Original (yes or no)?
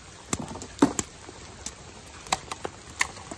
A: yes